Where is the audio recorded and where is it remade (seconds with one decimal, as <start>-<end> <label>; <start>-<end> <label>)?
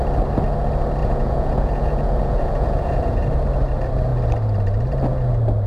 0.0-1.0 recorded; 1.0-3.2 remade; 3.2-5.7 recorded